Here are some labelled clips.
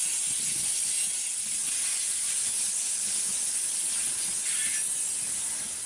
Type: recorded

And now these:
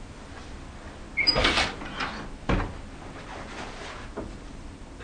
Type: recorded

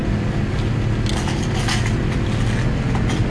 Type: recorded